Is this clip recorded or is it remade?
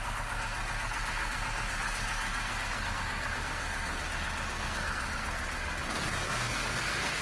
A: remade